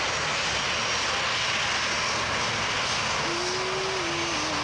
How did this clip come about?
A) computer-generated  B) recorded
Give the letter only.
B